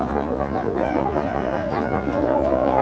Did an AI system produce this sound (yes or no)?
yes